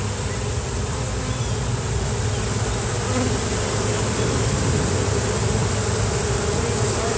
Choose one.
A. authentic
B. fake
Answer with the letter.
A